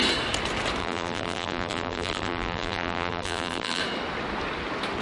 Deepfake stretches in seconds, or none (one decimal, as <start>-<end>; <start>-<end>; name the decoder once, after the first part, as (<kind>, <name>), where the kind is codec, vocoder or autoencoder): 0.8-3.8 (vocoder, BigVGAN v2)

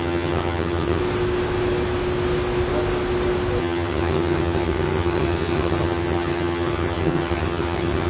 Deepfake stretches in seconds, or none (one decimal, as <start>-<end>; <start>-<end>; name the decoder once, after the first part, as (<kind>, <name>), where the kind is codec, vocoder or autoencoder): 0.0-1.0 (vocoder, HiFi-GAN); 3.6-8.1

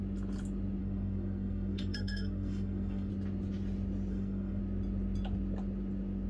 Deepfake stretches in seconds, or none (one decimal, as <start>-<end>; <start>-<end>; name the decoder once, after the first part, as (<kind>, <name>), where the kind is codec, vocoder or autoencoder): 0.8-3.1 (codec, SNAC); 4.1-4.6

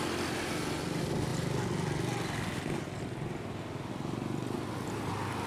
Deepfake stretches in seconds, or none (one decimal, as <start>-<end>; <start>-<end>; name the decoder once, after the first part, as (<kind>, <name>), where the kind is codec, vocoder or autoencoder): none

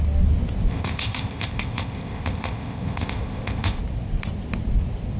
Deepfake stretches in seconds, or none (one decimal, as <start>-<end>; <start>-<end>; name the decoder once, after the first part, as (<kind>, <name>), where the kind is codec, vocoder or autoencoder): 0.7-3.8 (codec, ZipCodec)

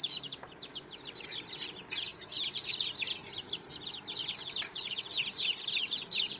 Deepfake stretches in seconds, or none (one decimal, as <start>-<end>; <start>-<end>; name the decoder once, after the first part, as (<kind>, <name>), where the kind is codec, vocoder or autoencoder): 0.0-6.4 (vocoder, BigVGAN v2)

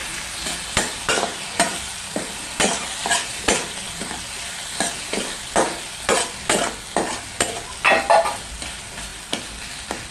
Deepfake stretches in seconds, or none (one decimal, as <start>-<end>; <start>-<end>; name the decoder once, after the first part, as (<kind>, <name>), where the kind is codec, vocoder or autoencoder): 0.0-4.7 (vocoder, BigVGAN v2)

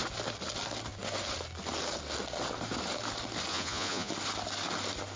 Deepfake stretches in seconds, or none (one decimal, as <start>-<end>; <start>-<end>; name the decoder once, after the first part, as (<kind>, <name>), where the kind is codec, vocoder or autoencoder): 3.5-4.1 (vocoder, Vocos)